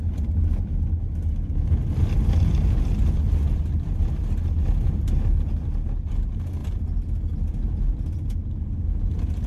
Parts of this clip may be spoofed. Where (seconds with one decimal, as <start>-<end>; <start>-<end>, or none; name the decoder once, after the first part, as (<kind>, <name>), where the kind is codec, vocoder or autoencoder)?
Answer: none